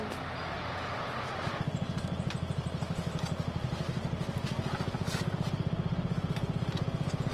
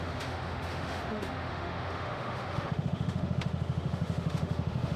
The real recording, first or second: first